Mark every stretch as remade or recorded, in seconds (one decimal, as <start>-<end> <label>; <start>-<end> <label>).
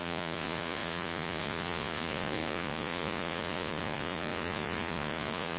0.0-5.6 remade